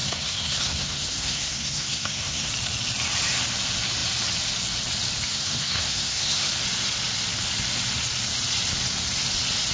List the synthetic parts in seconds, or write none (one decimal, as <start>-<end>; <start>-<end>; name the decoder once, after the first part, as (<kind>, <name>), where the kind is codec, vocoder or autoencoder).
0.0-2.5 (codec, SNAC); 5.3-6.5